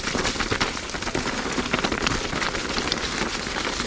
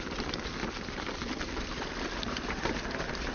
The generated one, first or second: second